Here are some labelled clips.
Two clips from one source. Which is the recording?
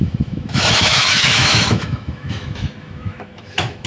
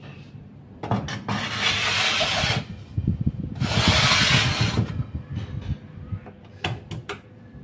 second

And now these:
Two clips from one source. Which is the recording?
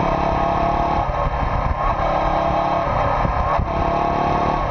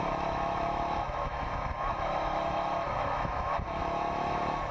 first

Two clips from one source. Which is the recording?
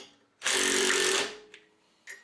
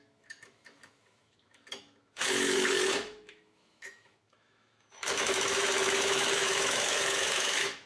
first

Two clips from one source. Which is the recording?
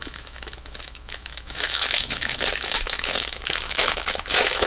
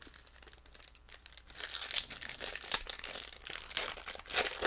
second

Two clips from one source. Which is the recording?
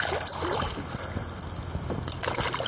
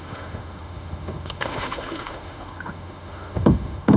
first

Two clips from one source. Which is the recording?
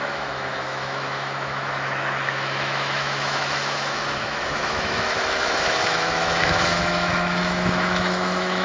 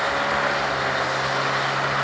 second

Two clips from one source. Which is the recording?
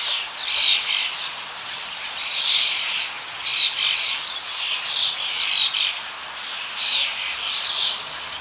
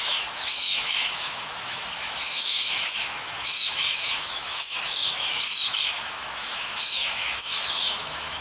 first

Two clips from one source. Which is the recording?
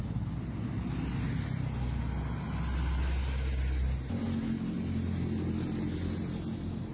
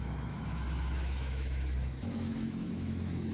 first